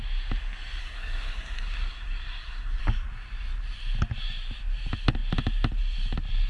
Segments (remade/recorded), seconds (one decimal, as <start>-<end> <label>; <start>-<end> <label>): 0.0-0.8 recorded; 0.8-2.8 remade; 2.8-6.5 recorded